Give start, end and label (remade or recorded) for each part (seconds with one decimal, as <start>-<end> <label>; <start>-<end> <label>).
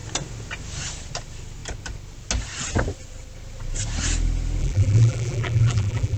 0.0-4.6 recorded; 4.6-6.2 remade